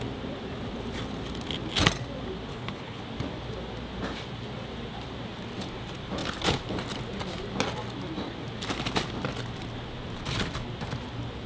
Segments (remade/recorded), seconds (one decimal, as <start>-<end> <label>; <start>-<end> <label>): 0.0-2.5 recorded; 2.5-3.0 remade; 3.0-11.5 recorded